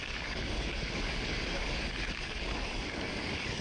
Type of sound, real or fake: fake